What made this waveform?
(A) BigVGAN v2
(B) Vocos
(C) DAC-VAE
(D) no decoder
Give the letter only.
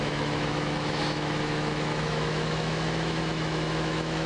C